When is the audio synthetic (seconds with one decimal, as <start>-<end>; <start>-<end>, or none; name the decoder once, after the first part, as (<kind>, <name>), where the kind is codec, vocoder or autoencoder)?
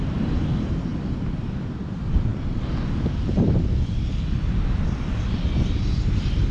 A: none